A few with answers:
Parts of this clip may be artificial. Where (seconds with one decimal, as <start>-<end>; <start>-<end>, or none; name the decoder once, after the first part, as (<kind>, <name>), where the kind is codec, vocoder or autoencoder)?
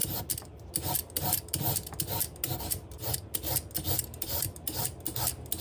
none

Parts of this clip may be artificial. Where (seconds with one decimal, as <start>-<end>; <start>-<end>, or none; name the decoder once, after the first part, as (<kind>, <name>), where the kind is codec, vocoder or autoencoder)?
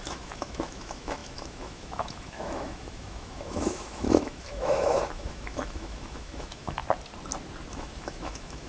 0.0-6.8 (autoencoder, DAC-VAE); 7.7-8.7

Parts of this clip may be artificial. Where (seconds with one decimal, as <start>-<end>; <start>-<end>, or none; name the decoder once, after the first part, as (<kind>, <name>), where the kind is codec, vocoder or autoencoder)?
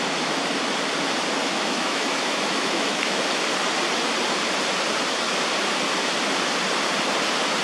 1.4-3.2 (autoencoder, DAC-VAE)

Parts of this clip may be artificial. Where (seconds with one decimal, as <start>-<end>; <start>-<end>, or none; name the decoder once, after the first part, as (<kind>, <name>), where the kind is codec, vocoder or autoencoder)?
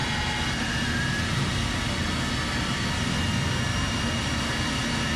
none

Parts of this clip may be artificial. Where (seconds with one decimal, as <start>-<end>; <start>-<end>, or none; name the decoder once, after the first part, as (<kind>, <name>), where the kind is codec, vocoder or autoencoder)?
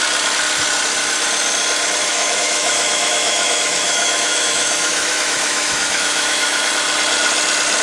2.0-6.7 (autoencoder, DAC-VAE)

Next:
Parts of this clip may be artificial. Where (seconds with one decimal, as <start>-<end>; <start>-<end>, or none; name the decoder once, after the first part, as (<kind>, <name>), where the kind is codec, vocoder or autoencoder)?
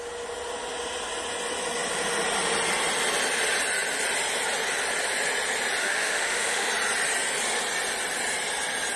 5.8-6.7 (autoencoder, DAC-VAE)